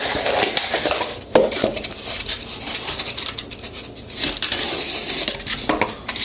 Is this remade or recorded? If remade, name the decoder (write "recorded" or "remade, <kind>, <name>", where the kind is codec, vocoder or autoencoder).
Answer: recorded